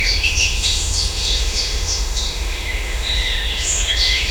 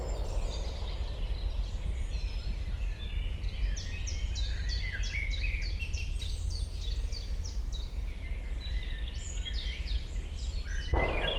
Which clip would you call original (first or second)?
second